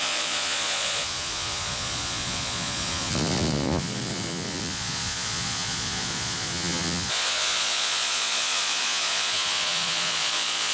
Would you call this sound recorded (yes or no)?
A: no